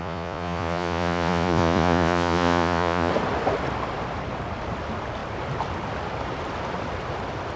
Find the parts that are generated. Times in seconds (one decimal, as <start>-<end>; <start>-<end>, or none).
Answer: 0.0-3.1